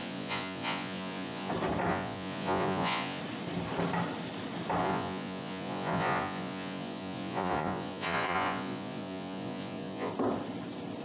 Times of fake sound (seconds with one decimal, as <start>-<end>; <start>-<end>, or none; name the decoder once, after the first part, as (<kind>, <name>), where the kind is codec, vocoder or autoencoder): 0.0-1.5 (vocoder, Vocos); 1.9-3.2; 4.8-10.1